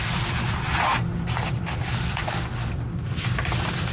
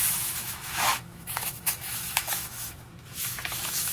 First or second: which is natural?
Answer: first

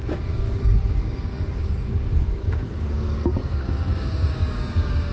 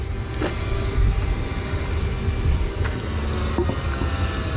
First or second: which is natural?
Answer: second